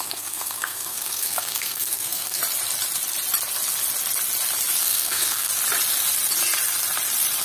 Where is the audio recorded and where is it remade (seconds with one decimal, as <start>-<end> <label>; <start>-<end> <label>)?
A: 0.0-2.4 remade; 2.4-4.8 recorded; 4.8-5.5 remade; 5.5-7.4 recorded